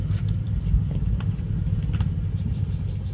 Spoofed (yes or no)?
no